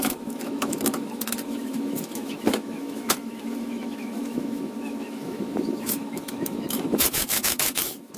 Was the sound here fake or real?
fake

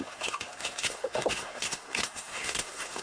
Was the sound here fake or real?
fake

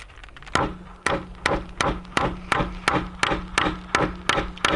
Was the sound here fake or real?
real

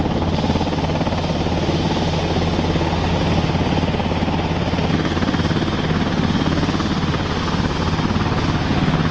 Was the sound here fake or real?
real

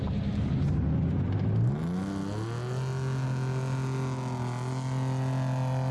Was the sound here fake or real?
real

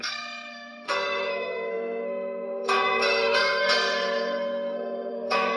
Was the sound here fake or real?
fake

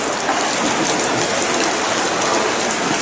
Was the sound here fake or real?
real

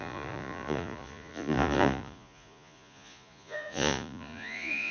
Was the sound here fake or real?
fake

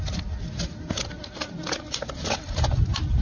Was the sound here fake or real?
real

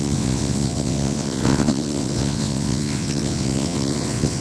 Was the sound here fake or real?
fake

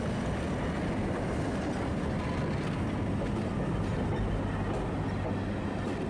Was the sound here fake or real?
real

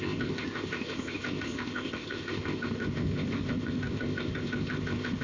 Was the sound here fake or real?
fake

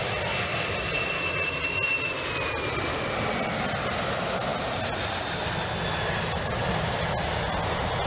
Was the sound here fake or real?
real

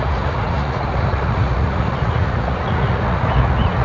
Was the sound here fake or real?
fake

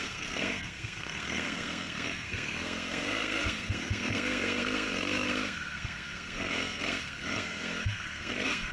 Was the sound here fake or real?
fake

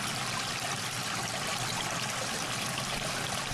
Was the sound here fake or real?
real